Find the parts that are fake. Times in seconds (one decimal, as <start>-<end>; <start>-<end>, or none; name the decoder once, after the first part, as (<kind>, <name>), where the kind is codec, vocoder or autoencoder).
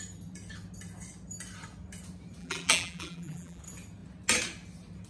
2.4-3.6 (vocoder, BigVGAN v2)